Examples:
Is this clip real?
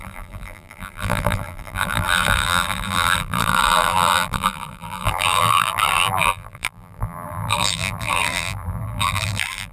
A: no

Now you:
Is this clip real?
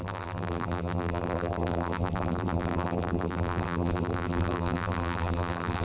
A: no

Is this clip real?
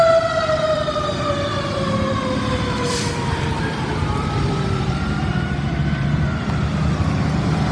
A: no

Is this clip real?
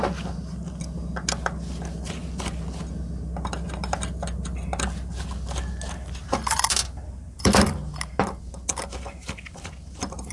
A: yes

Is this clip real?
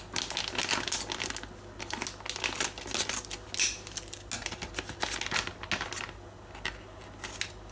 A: yes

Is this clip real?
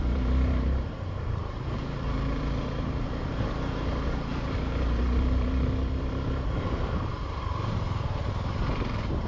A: no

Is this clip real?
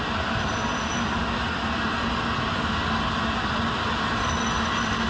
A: yes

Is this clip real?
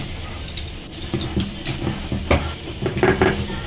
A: no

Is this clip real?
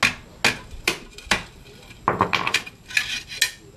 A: yes